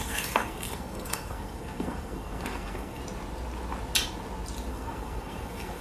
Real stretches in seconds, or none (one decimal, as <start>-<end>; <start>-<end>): 3.0-4.7